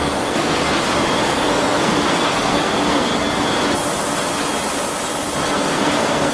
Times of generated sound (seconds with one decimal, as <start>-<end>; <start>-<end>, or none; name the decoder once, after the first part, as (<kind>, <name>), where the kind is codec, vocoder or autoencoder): 0.0-0.6 (codec, SNAC); 1.2-3.1; 5.5-6.3